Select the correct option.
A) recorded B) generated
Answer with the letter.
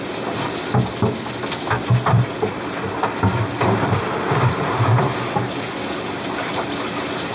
A